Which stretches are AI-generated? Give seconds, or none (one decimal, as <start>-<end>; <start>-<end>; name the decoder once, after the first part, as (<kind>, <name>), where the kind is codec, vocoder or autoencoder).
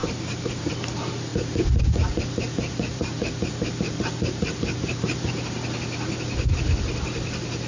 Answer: 0.0-0.7 (vocoder, BigVGAN v2); 1.3-5.3